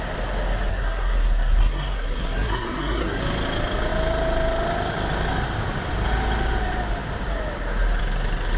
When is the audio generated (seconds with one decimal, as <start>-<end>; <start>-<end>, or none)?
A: 0.7-3.2